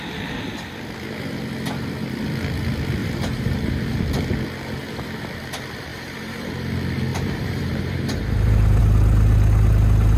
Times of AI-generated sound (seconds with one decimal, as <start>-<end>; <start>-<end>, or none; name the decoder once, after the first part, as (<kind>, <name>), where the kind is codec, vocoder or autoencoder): 3.0-4.0 (vocoder, BigVGAN v2); 5.9-6.5; 7.1-8.8